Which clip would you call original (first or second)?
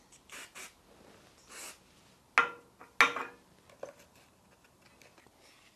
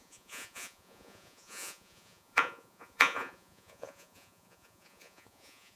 first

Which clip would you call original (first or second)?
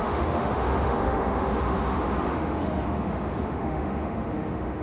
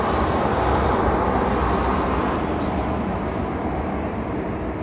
second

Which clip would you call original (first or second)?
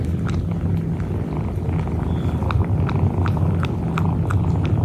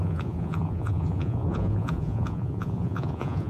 first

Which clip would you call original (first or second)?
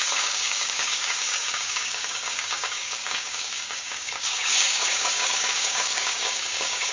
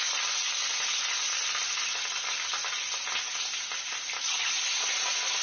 second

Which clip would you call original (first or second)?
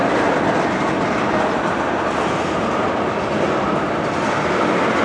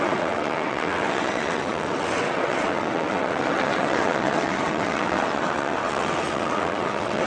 first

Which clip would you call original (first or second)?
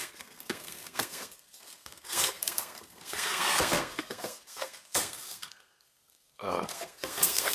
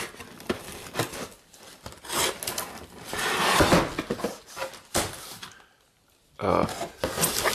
second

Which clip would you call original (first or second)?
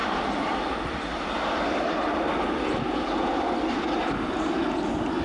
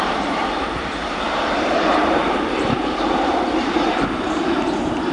first